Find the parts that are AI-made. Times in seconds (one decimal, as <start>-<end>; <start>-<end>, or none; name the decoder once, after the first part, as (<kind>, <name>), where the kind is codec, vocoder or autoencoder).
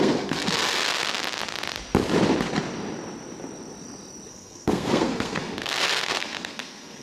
0.0-1.0 (codec, SNAC); 4.3-7.0